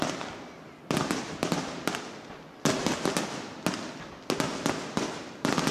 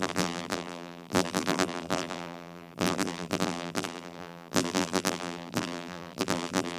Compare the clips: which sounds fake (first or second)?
second